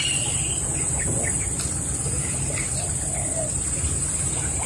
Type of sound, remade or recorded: recorded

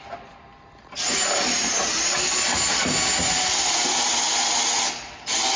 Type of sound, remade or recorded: recorded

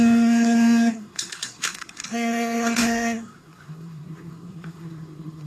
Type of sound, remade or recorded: remade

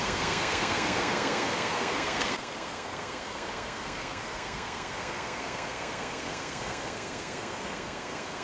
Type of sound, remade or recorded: remade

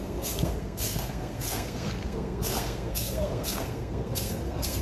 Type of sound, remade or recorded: remade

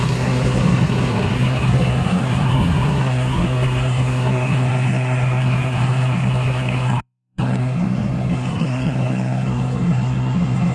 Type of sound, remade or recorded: remade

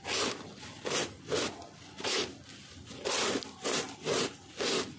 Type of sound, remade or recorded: recorded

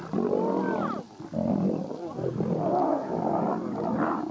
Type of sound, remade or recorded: recorded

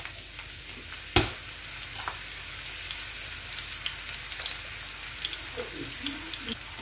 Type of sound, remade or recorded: recorded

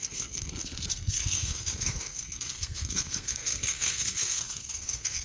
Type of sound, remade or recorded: remade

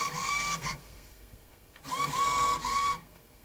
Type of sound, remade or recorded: remade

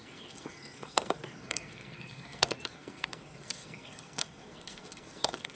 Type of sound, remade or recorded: remade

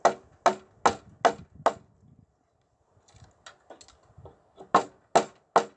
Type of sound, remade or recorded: recorded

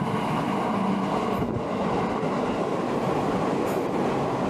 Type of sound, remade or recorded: recorded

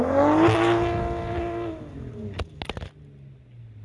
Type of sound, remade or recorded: recorded